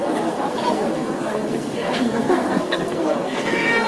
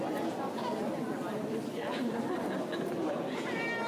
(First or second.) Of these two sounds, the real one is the second